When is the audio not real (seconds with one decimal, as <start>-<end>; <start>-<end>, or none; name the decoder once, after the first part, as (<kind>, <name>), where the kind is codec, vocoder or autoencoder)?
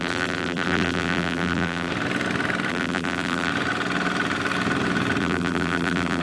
0.0-1.9 (vocoder, BigVGAN v2); 2.7-3.5; 5.2-6.2